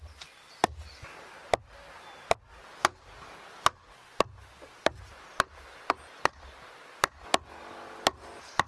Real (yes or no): yes